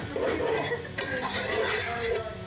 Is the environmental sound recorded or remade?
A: recorded